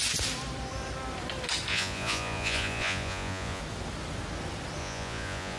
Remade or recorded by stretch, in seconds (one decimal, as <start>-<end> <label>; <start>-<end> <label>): 0.0-1.7 recorded; 1.7-3.6 remade; 3.6-4.8 recorded; 4.8-5.6 remade